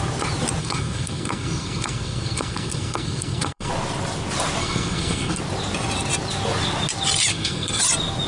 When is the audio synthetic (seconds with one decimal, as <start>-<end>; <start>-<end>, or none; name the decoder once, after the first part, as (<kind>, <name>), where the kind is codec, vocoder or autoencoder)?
0.6-3.7 (codec, SNAC); 4.6-5.4; 7.3-7.8